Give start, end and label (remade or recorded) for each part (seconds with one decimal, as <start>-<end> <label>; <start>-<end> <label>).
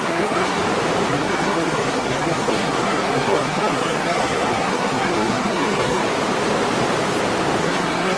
0.0-0.6 remade; 0.6-1.1 recorded; 1.1-6.0 remade; 6.0-7.6 recorded; 7.6-8.2 remade